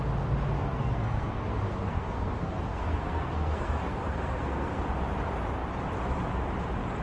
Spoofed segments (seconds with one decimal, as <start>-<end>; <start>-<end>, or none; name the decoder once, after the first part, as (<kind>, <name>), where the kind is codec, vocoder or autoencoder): 0.6-4.8 (codec, SNAC)